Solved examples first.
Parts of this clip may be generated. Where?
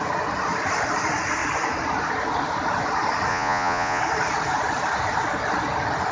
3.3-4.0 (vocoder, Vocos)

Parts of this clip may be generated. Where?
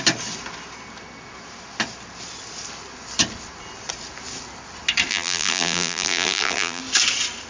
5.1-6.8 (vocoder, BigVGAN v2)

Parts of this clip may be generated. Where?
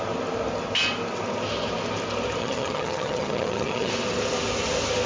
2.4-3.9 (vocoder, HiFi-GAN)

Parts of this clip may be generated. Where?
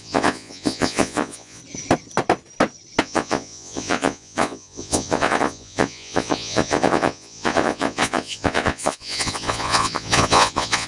0.0-1.6 (vocoder, Vocos); 3.0-10.9